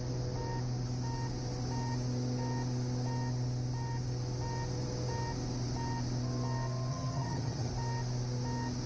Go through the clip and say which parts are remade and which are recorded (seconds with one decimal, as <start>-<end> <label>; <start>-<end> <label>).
0.0-6.9 recorded; 6.9-7.7 remade; 7.7-8.9 recorded